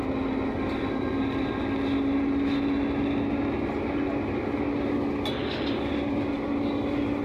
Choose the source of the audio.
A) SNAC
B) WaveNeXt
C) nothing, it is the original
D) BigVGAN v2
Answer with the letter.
C